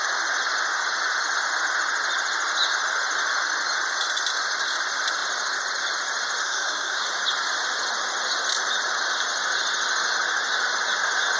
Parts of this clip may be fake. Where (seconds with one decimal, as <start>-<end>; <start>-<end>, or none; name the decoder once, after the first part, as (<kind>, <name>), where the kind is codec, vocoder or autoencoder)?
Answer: 6.4-7.0 (codec, SNAC)